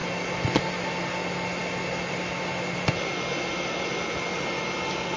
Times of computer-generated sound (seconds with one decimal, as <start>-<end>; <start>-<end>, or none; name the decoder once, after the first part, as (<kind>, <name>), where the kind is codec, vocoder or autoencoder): none